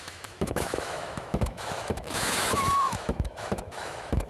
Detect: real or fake fake